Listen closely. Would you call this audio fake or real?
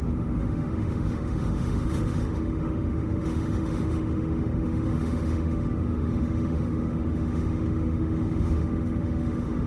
fake